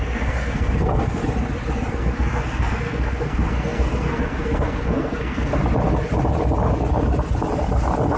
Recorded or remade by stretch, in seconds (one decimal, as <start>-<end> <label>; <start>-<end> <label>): 0.0-1.2 remade; 1.2-1.9 recorded; 1.9-5.6 remade; 5.6-8.2 recorded